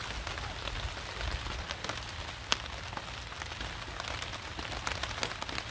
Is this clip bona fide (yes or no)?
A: yes